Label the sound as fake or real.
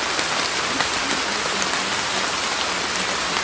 real